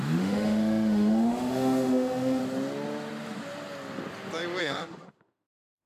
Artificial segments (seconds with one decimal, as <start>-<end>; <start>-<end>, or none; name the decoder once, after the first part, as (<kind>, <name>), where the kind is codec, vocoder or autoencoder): 0.0-2.4 (autoencoder, DAC-VAE); 4.6-5.9